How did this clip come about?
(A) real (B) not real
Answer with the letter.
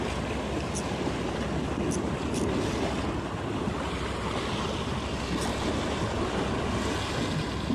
A